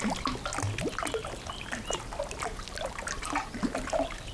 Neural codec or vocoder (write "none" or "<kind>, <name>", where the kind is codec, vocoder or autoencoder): none